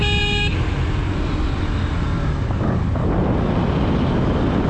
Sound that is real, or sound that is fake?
real